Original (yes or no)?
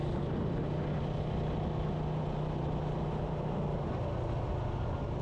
yes